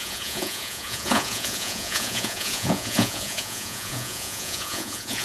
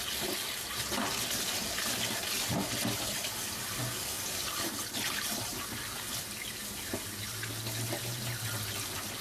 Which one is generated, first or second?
first